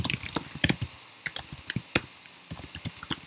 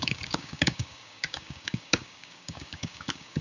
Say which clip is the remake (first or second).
second